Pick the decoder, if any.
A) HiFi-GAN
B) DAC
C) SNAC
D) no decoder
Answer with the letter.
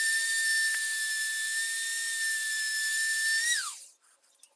D